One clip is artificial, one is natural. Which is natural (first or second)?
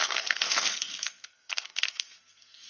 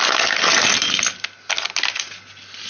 second